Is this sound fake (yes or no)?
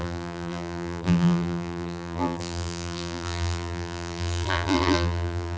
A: yes